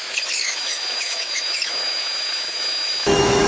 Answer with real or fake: fake